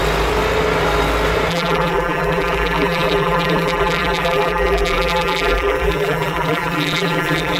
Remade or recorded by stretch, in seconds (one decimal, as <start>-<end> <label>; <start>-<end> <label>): 0.0-1.5 recorded; 1.5-7.6 remade